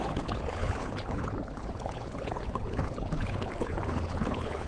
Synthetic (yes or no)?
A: yes